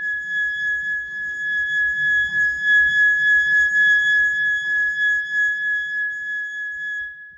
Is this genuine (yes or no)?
yes